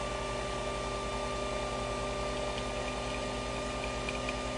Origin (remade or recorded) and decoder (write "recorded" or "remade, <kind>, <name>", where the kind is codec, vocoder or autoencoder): recorded